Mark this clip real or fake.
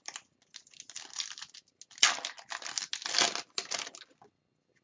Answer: real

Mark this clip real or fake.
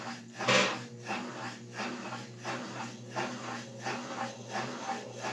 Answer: real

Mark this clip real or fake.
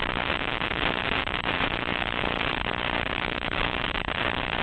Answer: fake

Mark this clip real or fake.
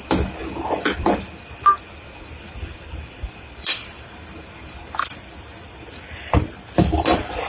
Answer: fake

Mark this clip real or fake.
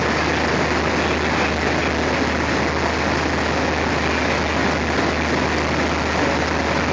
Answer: real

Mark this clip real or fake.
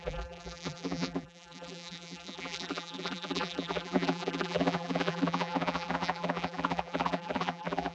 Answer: fake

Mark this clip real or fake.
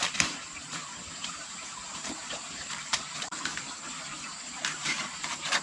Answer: fake